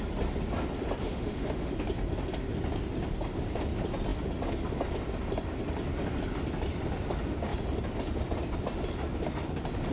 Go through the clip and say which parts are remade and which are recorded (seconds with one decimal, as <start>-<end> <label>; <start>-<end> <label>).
0.0-1.0 recorded; 1.0-1.7 remade; 1.7-9.9 recorded